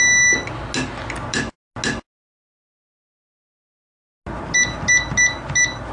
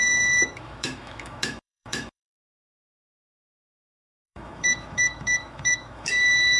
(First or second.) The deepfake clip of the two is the second